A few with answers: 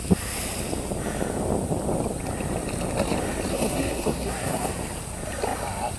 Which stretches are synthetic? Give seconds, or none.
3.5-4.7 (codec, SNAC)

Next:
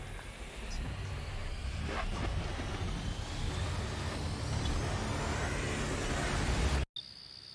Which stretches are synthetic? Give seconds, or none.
none

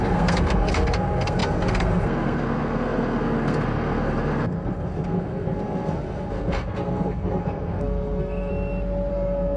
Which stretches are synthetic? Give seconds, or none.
0.0-8.5 (codec, SNAC); 9.1-9.6